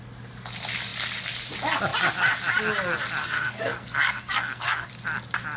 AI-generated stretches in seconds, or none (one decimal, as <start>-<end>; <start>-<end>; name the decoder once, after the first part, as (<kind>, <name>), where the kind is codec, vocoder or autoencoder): 3.2-4.9 (codec, SNAC)

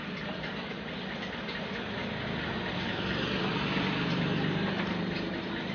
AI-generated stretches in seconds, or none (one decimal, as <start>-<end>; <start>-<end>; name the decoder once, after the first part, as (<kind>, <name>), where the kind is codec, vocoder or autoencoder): 1.6-2.0 (vocoder, BigVGAN v2); 3.5-5.7